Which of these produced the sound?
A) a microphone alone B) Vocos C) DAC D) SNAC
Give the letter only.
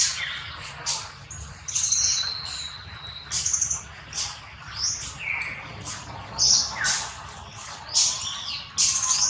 A